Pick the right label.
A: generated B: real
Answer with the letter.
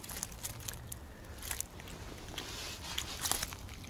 B